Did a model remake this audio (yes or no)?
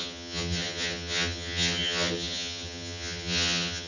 yes